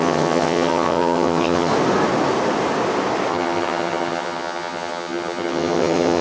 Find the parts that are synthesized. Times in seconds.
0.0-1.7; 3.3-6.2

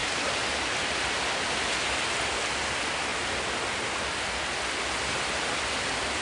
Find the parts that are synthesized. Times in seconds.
none